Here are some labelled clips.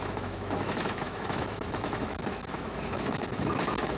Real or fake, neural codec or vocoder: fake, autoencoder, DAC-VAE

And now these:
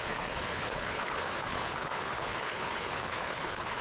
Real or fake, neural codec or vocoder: fake, codec, HILCodec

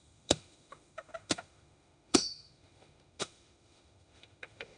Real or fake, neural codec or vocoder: fake, autoencoder, DAC-VAE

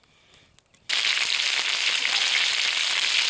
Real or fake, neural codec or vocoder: real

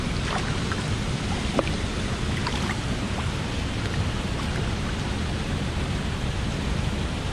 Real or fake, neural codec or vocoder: real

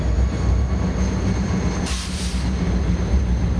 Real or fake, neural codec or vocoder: fake, vocoder, BigVGAN v2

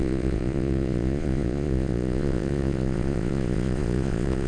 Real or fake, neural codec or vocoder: fake, vocoder, Vocos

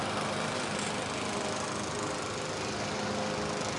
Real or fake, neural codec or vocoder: real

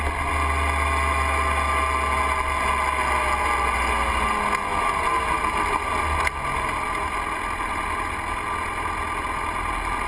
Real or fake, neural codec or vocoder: real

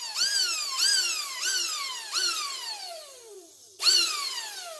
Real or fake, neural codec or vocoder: fake, vocoder, BigVGAN v2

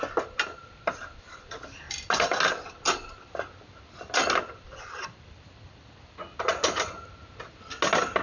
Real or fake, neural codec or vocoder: real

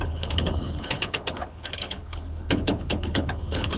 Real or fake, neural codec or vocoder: fake, codec, HILCodec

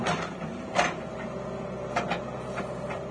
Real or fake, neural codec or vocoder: real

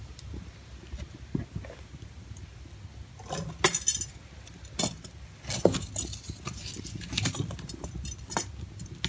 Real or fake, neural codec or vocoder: real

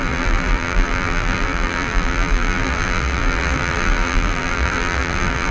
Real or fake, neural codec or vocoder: fake, vocoder, BigVGAN v2